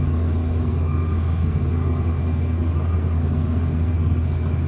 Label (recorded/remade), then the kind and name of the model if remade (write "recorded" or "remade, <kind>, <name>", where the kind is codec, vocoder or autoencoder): remade, codec, SNAC